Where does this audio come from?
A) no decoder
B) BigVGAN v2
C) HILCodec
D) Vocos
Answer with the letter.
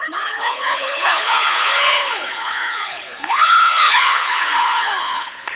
C